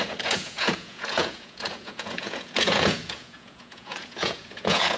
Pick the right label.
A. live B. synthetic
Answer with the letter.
B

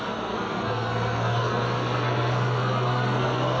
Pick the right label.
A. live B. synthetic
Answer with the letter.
B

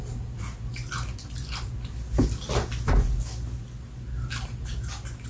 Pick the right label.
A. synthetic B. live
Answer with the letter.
B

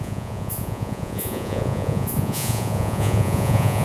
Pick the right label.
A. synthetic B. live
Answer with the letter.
A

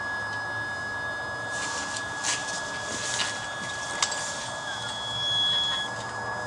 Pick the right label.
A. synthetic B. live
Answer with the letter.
B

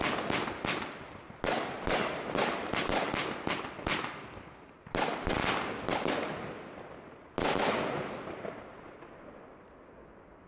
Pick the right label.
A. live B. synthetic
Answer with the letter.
A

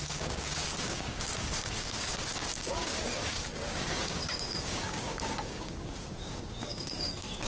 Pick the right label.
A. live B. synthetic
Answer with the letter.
B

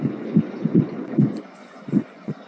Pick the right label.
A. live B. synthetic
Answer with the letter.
B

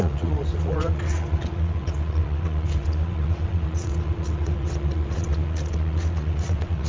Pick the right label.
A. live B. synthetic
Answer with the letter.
B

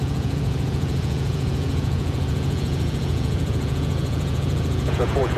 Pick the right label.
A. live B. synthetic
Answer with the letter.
B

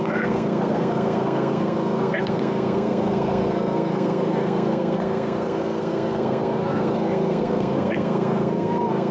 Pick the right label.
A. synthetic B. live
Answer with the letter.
A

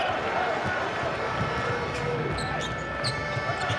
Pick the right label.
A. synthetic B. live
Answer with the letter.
B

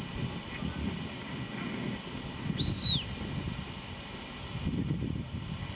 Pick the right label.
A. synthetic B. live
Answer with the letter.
B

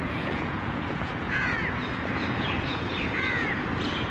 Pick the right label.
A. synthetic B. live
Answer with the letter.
A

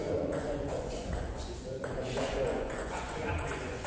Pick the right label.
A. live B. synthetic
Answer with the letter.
B